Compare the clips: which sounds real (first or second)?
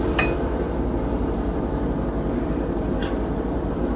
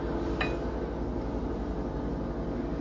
second